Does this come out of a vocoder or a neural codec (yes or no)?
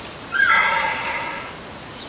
yes